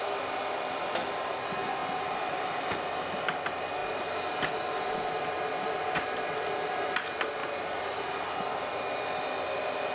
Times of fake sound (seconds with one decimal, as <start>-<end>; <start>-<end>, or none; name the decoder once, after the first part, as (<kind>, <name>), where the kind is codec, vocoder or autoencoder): none